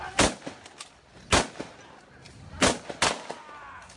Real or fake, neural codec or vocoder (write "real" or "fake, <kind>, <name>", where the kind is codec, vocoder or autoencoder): real